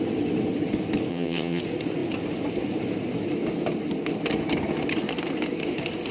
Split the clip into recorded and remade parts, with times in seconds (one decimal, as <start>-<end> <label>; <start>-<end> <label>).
0.0-1.1 recorded; 1.1-1.6 remade; 1.6-6.1 recorded